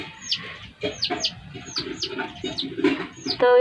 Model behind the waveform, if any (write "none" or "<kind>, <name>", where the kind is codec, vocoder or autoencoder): none